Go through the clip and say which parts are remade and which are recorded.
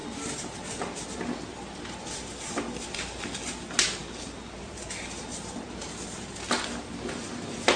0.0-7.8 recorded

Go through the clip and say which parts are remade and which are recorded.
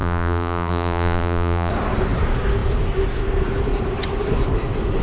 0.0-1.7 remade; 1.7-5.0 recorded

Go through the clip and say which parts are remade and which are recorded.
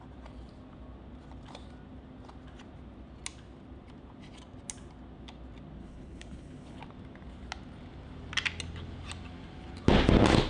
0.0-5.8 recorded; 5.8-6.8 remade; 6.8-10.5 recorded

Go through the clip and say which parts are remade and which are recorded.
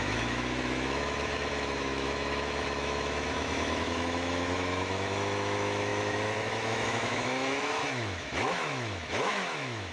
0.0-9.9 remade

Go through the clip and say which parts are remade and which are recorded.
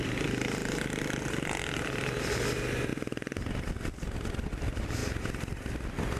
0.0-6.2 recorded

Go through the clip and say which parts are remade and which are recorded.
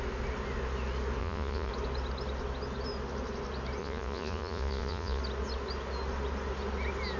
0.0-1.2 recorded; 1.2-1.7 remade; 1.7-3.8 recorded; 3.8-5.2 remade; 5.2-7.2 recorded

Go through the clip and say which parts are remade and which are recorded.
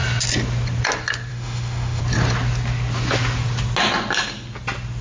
0.0-1.3 recorded; 1.3-2.0 remade; 2.0-5.0 recorded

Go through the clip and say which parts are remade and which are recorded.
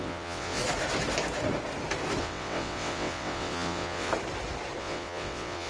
0.0-0.6 remade; 0.6-2.2 recorded; 2.2-4.1 remade; 4.1-4.8 recorded; 4.8-5.7 remade